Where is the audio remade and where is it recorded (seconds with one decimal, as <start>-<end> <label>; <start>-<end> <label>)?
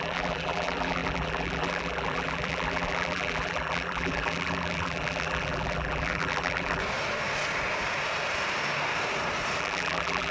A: 0.0-6.8 remade; 6.8-9.6 recorded; 9.6-10.3 remade